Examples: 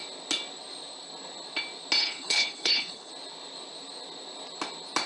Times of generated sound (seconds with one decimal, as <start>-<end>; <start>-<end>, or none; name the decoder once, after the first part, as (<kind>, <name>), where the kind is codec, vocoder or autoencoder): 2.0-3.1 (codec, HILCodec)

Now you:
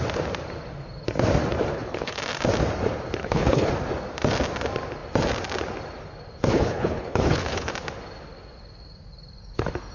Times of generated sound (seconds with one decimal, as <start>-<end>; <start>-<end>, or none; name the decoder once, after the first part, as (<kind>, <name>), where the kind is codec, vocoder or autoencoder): 1.7-2.2 (codec, HILCodec); 3.2-3.7; 6.5-7.7

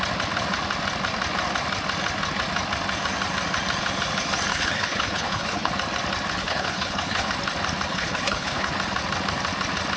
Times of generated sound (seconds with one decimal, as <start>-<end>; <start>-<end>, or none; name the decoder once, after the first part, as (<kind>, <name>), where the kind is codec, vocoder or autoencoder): 4.5-5.7 (codec, HILCodec); 6.4-7.3; 7.9-8.7

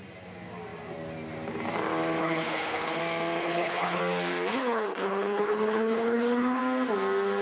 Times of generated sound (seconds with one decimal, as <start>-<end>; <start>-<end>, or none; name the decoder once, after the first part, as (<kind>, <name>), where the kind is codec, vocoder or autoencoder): 2.2-3.0 (codec, HILCodec); 3.4-4.0; 4.5-6.6